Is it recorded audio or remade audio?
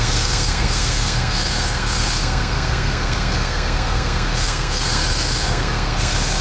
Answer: remade